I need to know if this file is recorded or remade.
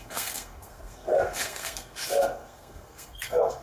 remade